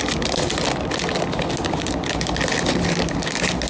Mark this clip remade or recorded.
recorded